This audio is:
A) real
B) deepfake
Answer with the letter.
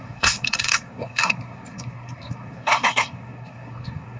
B